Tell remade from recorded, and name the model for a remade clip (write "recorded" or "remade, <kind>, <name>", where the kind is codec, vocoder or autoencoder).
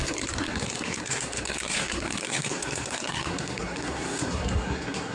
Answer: remade, codec, SNAC